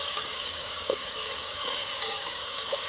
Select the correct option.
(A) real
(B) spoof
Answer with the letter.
B